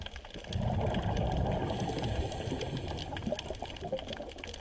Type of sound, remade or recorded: recorded